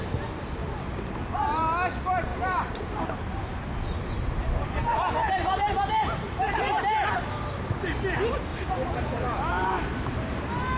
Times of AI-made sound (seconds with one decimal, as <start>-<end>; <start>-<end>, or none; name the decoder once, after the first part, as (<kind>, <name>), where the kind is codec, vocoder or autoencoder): 0.6-1.2 (vocoder, BigVGAN v2); 2.3-6.5; 8.5-10.4

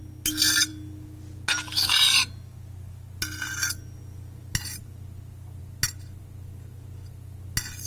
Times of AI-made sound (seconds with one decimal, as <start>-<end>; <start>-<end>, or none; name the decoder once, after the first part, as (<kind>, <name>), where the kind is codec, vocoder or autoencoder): none